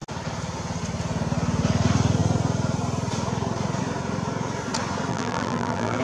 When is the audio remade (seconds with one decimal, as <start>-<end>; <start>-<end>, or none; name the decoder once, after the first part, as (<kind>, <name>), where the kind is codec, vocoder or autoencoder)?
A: 5.1-6.0 (vocoder, BigVGAN v2)